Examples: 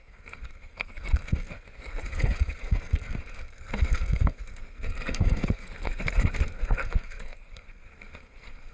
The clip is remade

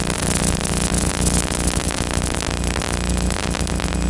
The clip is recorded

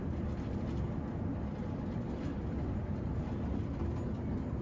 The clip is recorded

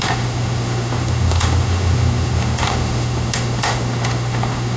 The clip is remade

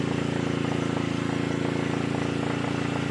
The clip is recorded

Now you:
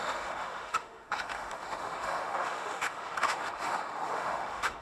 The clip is remade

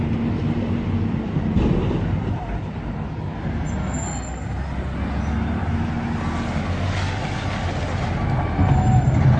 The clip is recorded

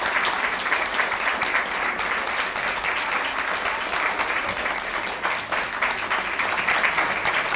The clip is recorded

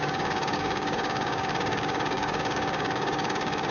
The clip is remade